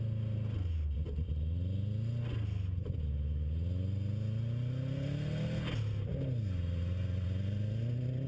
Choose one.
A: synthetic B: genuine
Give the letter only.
B